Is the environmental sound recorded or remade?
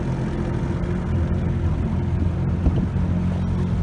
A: recorded